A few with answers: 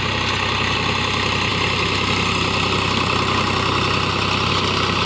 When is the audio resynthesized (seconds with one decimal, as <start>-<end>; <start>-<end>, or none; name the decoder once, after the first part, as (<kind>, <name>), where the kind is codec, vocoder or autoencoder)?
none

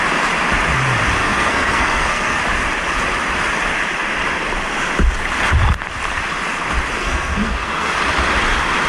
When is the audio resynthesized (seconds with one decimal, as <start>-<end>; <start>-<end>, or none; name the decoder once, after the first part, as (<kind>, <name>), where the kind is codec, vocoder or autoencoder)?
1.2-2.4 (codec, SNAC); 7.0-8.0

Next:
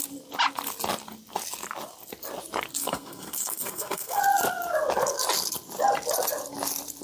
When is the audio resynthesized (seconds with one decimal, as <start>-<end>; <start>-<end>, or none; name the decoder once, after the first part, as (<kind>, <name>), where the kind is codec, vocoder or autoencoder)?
2.8-4.2 (codec, SNAC)

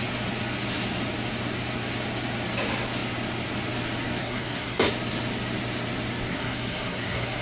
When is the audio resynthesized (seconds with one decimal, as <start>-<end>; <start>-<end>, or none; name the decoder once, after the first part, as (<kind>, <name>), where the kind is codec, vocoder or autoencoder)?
4.2-4.8 (codec, SNAC); 6.3-7.4

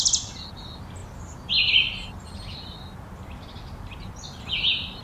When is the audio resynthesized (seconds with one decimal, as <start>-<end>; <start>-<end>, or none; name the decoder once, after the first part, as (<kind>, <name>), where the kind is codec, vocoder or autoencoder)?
none

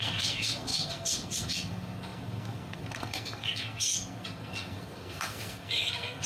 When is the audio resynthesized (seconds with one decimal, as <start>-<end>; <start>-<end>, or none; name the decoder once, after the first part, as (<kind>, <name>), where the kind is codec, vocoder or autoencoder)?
0.0-6.3 (codec, SNAC)